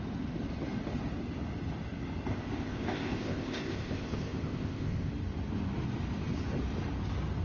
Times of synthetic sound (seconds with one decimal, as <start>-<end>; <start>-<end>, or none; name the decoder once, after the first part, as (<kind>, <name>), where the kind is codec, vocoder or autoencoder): 2.3-5.1 (codec, ZipCodec)